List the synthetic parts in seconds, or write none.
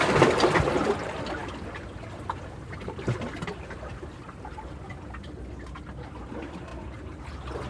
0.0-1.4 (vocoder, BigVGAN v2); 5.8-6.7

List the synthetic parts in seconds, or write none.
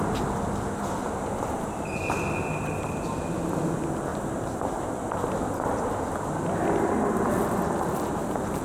4.1-4.6 (vocoder, BigVGAN v2)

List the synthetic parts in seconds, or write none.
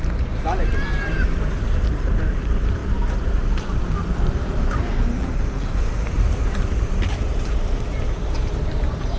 0.0-9.2 (vocoder, BigVGAN v2)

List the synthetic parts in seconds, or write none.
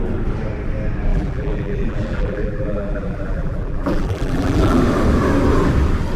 1.1-4.8 (vocoder, BigVGAN v2)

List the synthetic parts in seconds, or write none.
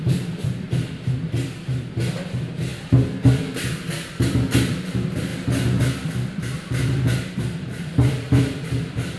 0.0-5.3 (vocoder, BigVGAN v2); 5.8-9.2